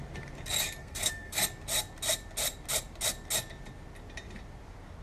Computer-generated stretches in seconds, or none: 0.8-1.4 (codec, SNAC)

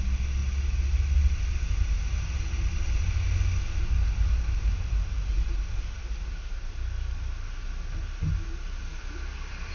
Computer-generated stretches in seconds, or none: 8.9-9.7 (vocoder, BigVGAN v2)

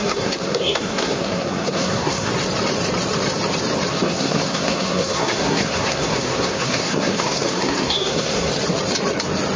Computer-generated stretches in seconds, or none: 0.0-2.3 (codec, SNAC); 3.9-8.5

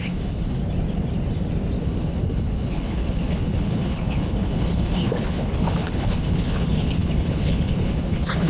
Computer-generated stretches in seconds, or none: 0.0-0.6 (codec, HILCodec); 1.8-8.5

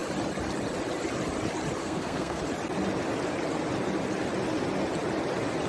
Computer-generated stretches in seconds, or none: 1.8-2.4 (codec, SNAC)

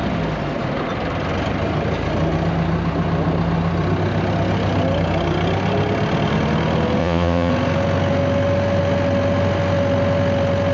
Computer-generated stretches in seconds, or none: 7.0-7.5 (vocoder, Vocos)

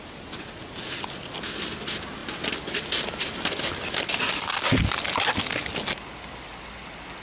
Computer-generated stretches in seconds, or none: none

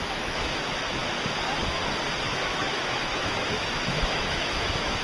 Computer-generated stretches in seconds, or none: 0.0-1.0 (autoencoder, DAC-VAE); 2.2-5.0